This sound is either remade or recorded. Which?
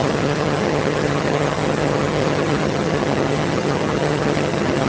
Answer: remade